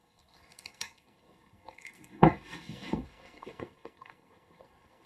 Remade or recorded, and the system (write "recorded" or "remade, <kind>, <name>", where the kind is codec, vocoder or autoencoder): remade, codec, SNAC